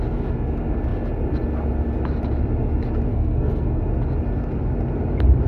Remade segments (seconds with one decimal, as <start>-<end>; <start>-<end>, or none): 3.1-3.8